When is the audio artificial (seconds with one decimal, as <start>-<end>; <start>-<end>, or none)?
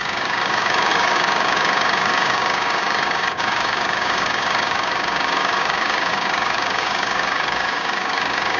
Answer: 0.0-8.6